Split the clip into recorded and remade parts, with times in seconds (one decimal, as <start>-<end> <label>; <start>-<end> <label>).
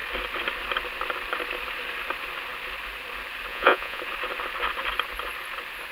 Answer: 0.0-3.5 recorded; 3.5-4.0 remade; 4.0-5.9 recorded